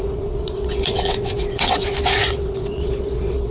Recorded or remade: remade